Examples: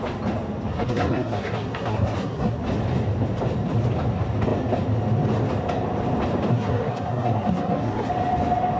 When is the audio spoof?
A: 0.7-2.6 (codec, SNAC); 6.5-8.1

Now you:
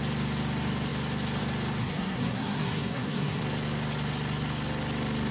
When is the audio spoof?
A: 1.8-3.4 (codec, SNAC)

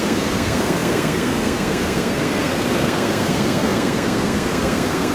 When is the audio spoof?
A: 0.0-5.1 (codec, SNAC)

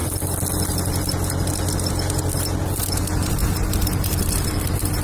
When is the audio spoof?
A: none